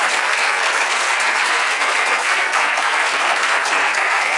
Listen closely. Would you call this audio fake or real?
fake